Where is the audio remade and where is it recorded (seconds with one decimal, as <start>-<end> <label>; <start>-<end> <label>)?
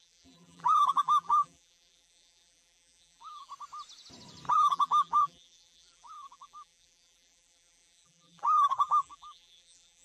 0.0-3.5 remade; 3.5-4.5 recorded; 4.5-10.0 remade